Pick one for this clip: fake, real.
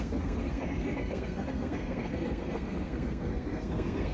fake